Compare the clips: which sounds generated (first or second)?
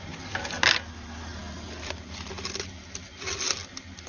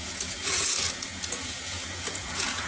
second